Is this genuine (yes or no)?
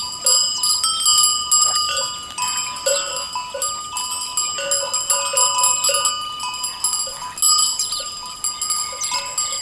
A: yes